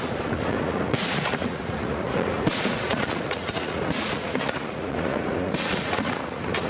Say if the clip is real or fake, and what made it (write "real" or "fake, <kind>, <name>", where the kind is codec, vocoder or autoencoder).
fake, vocoder, Vocos